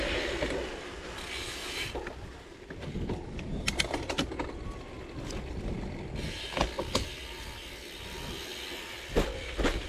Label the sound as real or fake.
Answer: real